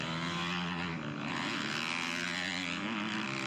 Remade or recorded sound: recorded